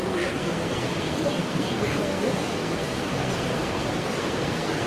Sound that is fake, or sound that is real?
fake